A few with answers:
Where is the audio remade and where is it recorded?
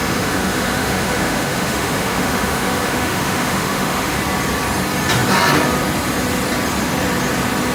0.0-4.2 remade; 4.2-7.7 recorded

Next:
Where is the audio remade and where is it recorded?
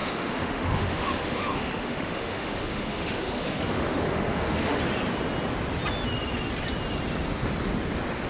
0.0-4.8 remade; 4.8-8.3 recorded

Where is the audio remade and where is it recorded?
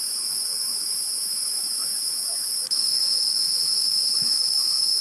0.0-5.0 remade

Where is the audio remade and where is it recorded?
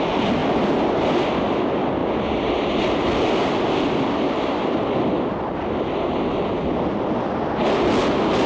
0.0-8.5 recorded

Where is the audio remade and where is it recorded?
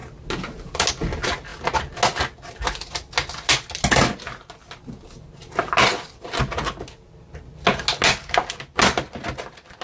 0.0-9.8 recorded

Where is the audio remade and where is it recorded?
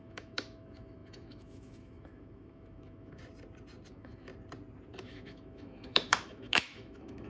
0.0-3.2 remade; 3.2-3.9 recorded; 3.9-4.3 remade; 4.3-5.0 recorded; 5.0-7.3 remade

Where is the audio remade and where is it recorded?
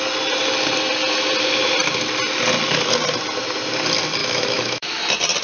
0.0-4.2 recorded; 4.2-5.0 remade; 5.0-5.4 recorded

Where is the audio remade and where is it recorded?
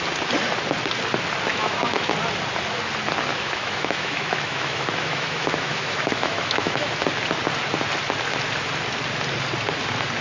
0.0-1.5 recorded; 1.5-2.1 remade; 2.1-3.3 recorded; 3.3-6.9 remade; 6.9-10.2 recorded